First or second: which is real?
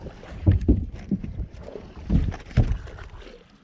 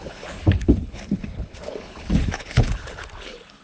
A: first